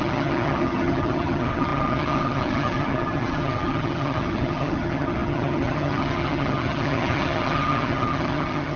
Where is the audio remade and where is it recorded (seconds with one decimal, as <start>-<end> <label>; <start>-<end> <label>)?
0.0-8.8 remade